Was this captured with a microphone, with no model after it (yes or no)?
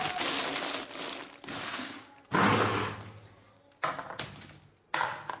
yes